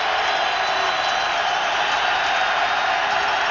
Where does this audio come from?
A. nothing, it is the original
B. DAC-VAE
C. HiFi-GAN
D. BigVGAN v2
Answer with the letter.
A